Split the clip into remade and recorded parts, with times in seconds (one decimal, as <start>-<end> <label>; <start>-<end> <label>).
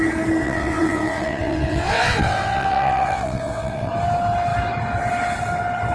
0.0-0.4 recorded; 0.4-3.9 remade; 3.9-5.9 recorded